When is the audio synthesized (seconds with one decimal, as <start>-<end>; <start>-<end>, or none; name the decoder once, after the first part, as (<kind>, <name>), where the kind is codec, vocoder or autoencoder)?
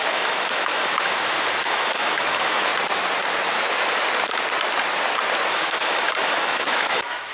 0.0-2.7 (autoencoder, DAC-VAE); 5.5-7.3